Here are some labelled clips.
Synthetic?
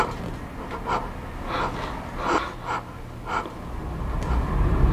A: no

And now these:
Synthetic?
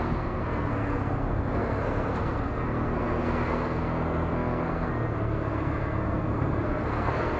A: yes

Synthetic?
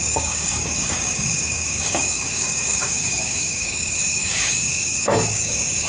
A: yes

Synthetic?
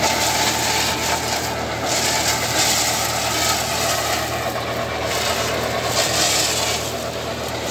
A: no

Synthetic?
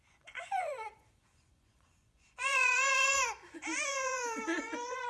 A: yes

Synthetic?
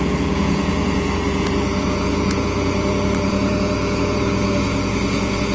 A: yes